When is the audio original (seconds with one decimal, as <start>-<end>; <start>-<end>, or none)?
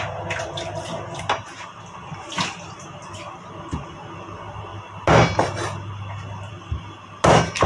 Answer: 0.0-7.7